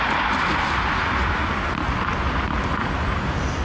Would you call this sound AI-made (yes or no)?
no